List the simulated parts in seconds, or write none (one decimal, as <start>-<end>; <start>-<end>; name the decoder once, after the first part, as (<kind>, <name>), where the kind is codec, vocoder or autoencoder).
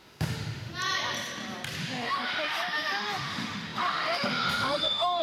0.0-0.7 (autoencoder, DAC-VAE); 1.8-5.2